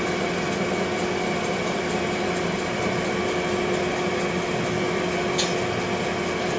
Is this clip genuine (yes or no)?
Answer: yes